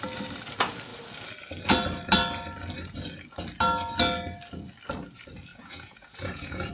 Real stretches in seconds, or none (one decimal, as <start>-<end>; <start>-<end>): 0.0-5.5